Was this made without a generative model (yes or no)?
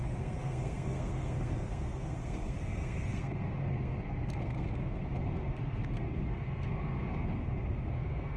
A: no